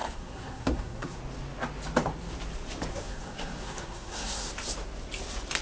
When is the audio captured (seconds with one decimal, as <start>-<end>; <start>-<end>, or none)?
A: 1.2-2.9; 4.5-5.6